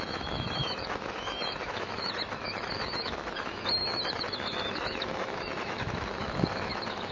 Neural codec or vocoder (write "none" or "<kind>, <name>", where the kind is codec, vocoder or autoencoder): autoencoder, DAC-VAE